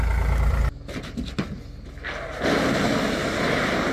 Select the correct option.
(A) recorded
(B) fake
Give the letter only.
A